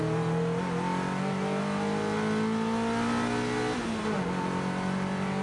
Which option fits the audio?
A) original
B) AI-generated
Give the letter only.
A